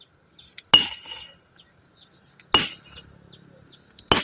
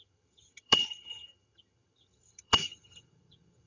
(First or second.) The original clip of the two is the first